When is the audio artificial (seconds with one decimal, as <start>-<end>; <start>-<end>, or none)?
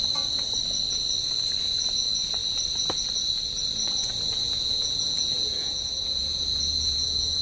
4.3-7.4